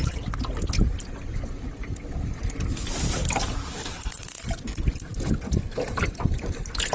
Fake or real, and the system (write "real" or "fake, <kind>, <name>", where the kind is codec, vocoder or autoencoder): real